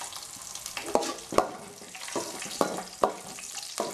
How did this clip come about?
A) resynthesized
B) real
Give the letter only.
B